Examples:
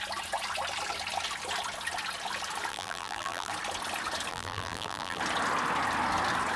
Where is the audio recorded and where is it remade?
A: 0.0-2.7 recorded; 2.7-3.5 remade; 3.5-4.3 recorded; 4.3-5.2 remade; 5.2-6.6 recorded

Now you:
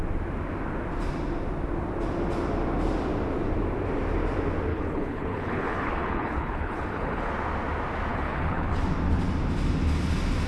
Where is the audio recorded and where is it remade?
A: 0.0-4.7 recorded; 4.7-7.3 remade; 7.3-8.1 recorded; 8.1-8.8 remade; 8.8-10.5 recorded

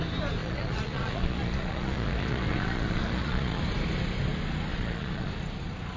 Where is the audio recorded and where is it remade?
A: 0.0-0.4 recorded; 0.4-3.6 remade; 3.6-4.7 recorded; 4.7-5.3 remade; 5.3-6.0 recorded

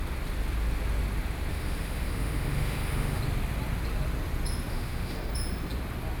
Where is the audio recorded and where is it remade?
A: 0.0-1.5 recorded; 1.5-3.2 remade; 3.2-4.7 recorded; 4.7-5.3 remade; 5.3-6.2 recorded

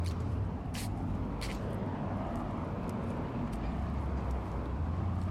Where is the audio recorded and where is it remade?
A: 0.0-5.3 recorded

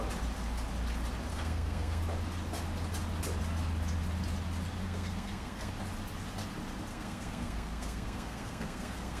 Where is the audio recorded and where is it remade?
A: 0.0-1.3 recorded; 1.3-2.0 remade; 2.0-4.8 recorded; 4.8-5.7 remade; 5.7-6.9 recorded; 6.9-9.2 remade

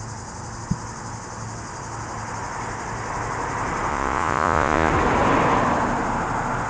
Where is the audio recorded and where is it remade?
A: 0.0-3.9 recorded; 3.9-4.9 remade; 4.9-6.7 recorded

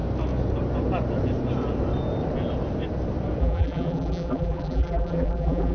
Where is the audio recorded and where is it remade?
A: 0.0-3.4 recorded; 3.4-5.7 remade